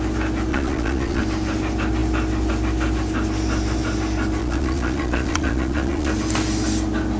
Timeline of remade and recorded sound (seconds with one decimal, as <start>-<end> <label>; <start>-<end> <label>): 0.0-0.5 recorded; 0.5-1.2 remade; 1.2-4.4 recorded; 4.4-6.1 remade; 6.1-7.2 recorded